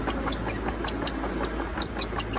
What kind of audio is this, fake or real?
real